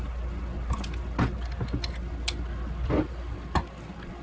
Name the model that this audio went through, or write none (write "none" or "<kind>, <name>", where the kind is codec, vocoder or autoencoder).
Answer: none